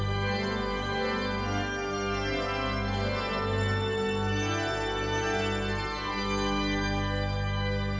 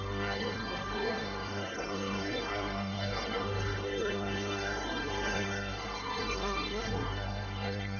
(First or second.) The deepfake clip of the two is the second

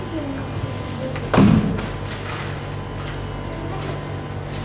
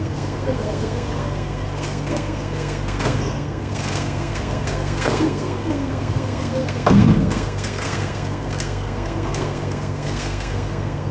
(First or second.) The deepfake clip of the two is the second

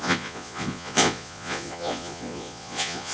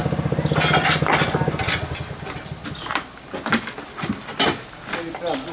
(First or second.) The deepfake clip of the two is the first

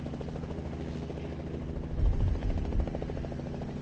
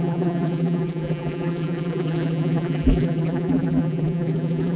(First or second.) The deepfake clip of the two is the second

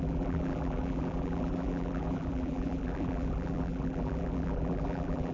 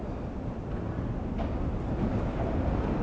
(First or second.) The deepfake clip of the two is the first